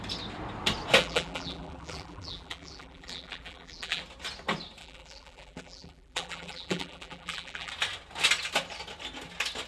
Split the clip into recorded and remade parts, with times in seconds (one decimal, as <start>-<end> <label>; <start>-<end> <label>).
0.0-1.0 recorded; 1.0-4.0 remade; 4.0-4.8 recorded; 4.8-7.7 remade; 7.7-9.7 recorded